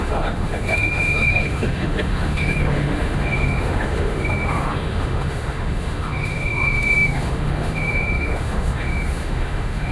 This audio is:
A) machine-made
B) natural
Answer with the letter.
A